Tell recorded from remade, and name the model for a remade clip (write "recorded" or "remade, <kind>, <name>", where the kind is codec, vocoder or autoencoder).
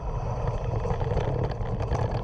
recorded